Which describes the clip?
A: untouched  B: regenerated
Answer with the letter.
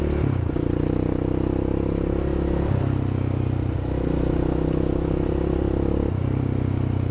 A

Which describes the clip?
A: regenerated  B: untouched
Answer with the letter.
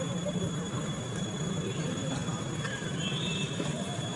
A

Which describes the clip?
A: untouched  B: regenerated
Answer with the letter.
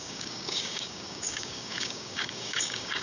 B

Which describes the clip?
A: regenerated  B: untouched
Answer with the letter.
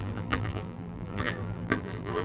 A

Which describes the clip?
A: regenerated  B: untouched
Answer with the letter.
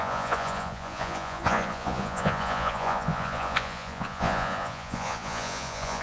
A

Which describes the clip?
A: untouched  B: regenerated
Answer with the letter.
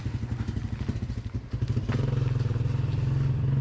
A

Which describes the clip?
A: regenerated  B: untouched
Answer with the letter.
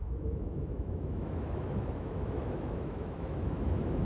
A